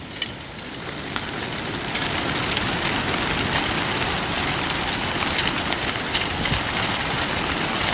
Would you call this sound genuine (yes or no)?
yes